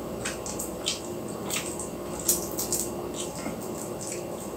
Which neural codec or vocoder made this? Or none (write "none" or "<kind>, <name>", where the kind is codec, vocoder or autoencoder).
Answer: none